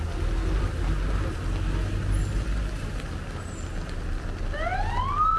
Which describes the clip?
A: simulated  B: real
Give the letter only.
B